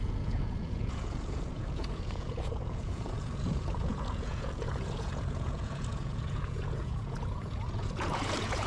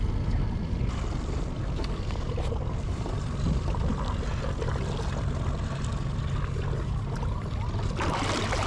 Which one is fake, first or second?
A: first